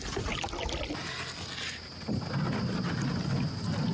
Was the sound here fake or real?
real